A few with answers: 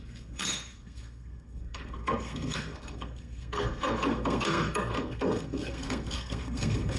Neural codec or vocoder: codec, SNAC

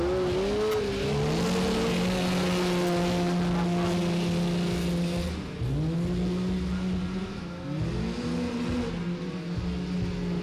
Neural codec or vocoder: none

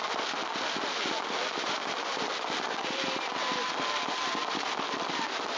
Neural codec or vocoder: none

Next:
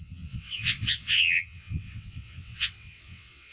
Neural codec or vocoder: vocoder, WaveNeXt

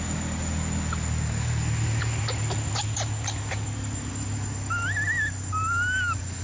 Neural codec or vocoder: none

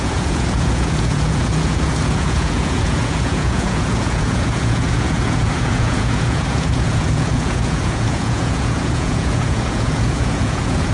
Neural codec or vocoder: vocoder, Vocos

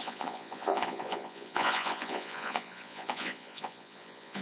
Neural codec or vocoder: vocoder, Vocos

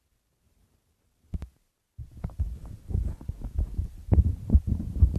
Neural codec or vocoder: none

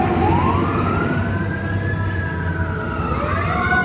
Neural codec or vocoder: none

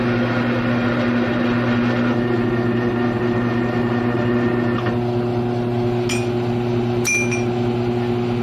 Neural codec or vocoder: none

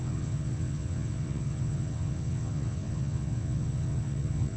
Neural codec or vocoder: vocoder, WaveNeXt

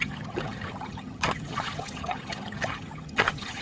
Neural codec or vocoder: vocoder, HiFi-GAN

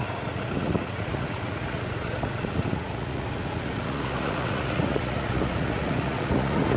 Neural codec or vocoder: vocoder, Vocos